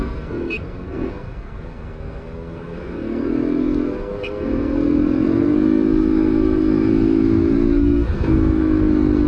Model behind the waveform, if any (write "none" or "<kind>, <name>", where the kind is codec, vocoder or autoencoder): codec, SNAC